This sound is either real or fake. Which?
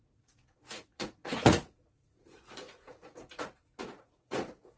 fake